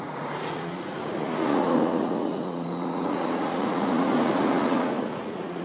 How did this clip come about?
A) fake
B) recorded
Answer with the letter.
A